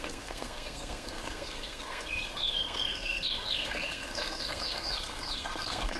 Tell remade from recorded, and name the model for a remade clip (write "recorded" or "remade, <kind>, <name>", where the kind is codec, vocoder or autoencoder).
remade, codec, SNAC